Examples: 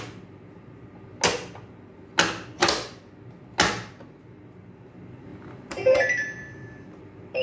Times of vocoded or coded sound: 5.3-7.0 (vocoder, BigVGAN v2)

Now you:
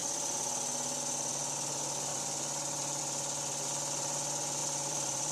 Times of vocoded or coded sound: 2.1-3.0 (vocoder, BigVGAN v2); 4.6-5.3

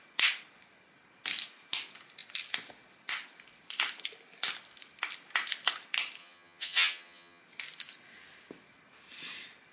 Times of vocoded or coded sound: 6.2-7.4 (vocoder, HiFi-GAN)

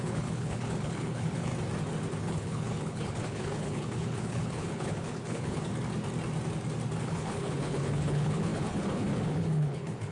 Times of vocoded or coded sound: 0.0-1.5 (codec, HILCodec); 2.2-5.7; 7.0-10.1

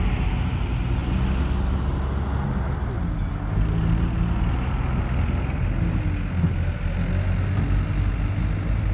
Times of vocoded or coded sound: none

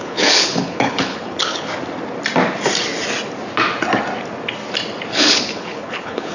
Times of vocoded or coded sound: 0.0-1.7 (codec, HILCodec); 5.1-6.3